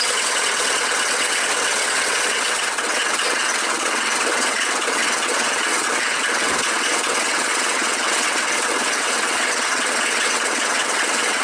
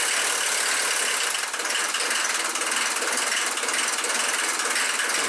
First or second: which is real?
second